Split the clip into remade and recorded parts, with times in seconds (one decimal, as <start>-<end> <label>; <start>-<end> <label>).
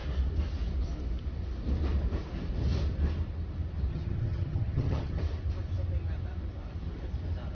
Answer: 0.0-3.9 recorded; 3.9-5.2 remade; 5.2-7.5 recorded